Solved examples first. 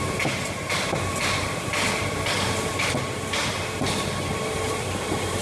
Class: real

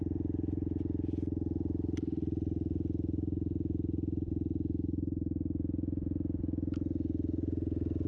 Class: real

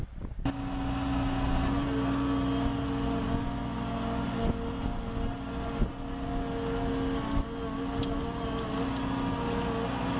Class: real